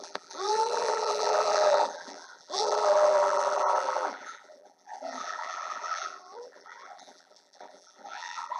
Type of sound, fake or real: fake